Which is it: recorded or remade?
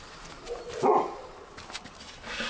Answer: recorded